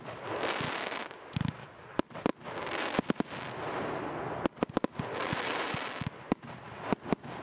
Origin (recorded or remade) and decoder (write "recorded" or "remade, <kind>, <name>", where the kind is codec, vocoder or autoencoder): recorded